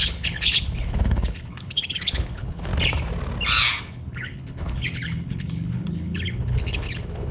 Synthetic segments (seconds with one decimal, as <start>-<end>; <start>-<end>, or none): 0.0-2.7; 3.8-7.3